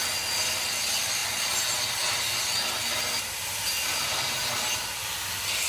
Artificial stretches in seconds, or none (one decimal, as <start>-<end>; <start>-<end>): none